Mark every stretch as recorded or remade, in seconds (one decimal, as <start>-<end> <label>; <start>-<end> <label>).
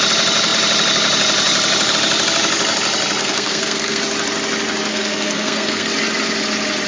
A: 0.0-3.2 recorded; 3.2-4.0 remade; 4.0-4.9 recorded; 4.9-5.9 remade; 5.9-6.9 recorded